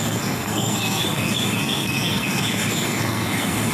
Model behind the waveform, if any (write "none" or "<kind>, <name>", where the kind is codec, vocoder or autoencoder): codec, SNAC